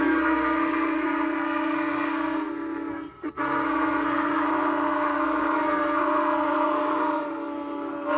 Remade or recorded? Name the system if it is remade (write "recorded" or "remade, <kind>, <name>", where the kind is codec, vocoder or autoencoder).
remade, codec, SNAC